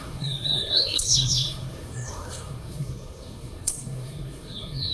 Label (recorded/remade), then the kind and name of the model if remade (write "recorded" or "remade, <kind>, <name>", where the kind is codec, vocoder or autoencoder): remade, codec, SNAC